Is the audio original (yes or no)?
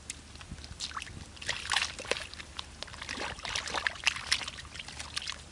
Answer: yes